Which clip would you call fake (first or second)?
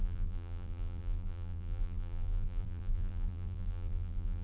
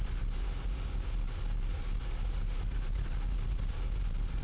first